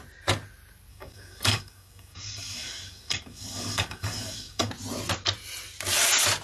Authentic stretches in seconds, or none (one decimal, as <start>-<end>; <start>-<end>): 0.0-0.9; 4.7-6.4